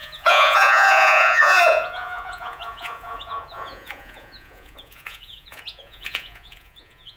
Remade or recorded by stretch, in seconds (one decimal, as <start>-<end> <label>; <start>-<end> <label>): 0.0-7.2 remade